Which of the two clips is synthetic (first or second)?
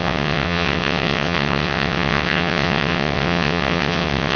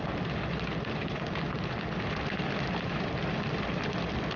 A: first